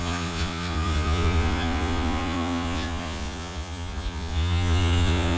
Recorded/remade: remade